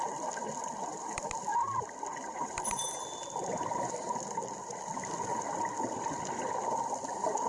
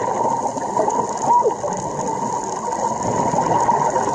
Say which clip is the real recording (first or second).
second